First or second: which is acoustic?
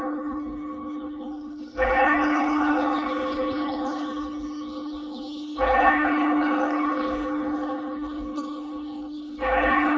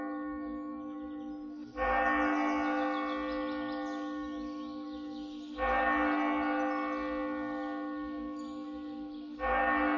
second